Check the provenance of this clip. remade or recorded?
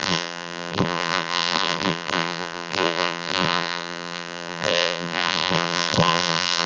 remade